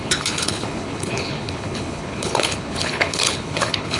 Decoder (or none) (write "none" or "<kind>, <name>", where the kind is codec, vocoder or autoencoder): codec, HILCodec